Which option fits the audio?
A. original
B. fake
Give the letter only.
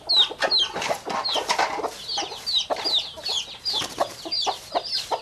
A